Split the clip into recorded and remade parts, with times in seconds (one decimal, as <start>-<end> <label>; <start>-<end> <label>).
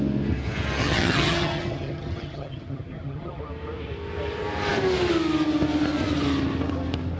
0.0-0.8 recorded; 0.8-3.4 remade; 3.4-7.2 recorded